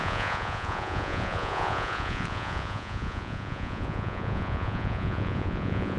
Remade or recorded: remade